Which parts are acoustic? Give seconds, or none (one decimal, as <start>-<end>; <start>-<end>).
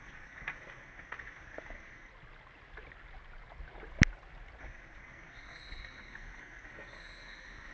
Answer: 2.1-4.6